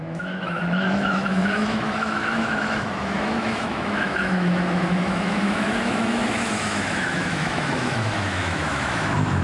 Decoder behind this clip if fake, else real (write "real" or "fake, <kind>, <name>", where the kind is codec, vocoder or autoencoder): fake, autoencoder, DAC-VAE